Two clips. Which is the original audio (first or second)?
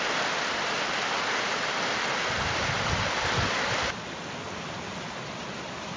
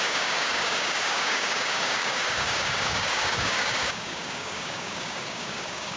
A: first